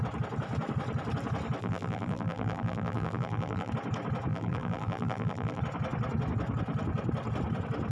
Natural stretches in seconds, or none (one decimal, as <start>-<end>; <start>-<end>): 0.0-1.6; 3.7-4.3; 5.6-7.9